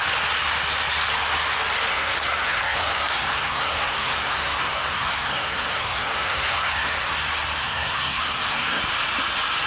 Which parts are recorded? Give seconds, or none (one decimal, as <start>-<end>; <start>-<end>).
0.0-1.9; 7.1-7.6; 8.8-9.7